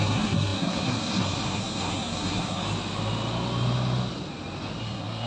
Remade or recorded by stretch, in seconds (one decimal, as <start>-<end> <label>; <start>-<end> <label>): 0.0-2.6 remade; 2.6-4.8 recorded; 4.8-5.3 remade